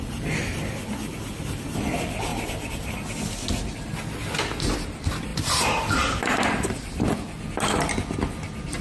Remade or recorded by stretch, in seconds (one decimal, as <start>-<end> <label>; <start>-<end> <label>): 0.0-2.3 recorded; 2.3-3.1 remade; 3.1-5.3 recorded; 5.3-7.0 remade; 7.0-8.8 recorded